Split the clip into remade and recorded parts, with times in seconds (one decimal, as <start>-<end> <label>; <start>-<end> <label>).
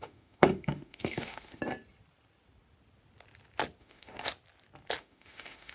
0.0-1.6 remade; 1.6-3.8 recorded; 3.8-4.3 remade; 4.3-5.0 recorded; 5.0-5.7 remade